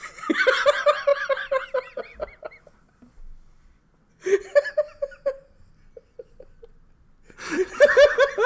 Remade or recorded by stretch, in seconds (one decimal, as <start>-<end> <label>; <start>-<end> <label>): 0.0-8.5 recorded